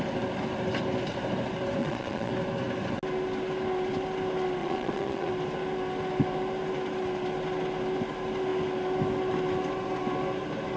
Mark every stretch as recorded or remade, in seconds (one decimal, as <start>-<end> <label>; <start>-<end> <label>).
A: 0.0-1.8 recorded; 1.8-2.3 remade; 2.3-4.6 recorded; 4.6-5.3 remade; 5.3-10.8 recorded